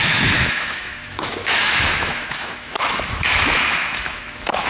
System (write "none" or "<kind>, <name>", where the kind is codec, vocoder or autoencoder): autoencoder, DAC-VAE